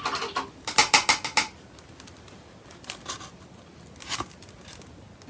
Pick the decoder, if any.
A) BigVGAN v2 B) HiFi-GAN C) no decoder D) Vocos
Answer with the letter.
C